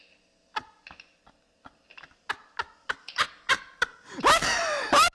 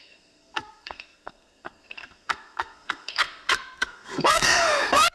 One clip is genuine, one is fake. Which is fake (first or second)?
second